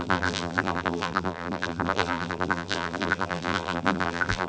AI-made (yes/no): yes